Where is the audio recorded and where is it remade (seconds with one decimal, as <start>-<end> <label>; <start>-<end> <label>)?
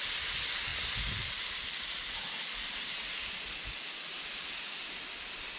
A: 0.0-5.6 recorded